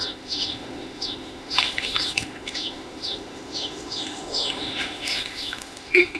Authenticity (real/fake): fake